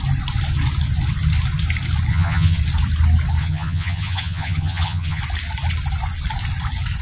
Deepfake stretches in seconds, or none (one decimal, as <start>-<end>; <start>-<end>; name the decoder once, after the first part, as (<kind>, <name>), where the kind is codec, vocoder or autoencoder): 2.1-2.6 (vocoder, HiFi-GAN); 3.4-5.2